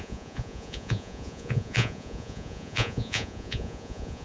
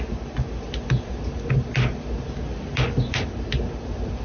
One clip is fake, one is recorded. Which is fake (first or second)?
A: first